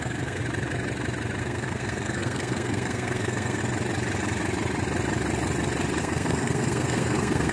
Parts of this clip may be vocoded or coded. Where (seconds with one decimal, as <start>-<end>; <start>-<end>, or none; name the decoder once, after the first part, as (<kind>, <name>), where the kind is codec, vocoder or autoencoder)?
0.0-0.4 (codec, SNAC); 1.4-3.6; 6.0-7.5